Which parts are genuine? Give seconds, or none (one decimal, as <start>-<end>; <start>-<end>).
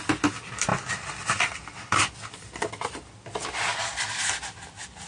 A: 0.0-0.7; 3.8-5.1